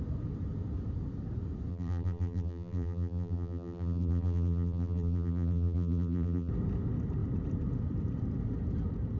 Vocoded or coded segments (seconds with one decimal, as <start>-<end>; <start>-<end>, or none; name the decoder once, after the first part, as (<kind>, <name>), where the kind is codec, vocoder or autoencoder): 1.7-6.5 (vocoder, BigVGAN v2)